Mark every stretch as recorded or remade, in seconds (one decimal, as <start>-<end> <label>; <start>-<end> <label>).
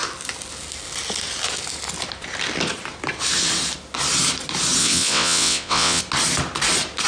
0.0-4.8 recorded; 4.8-6.0 remade; 6.0-7.1 recorded